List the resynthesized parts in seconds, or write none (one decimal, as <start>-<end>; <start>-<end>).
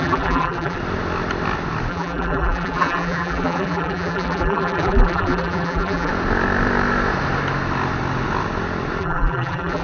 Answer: 0.0-0.8; 1.9-6.1; 9.0-9.8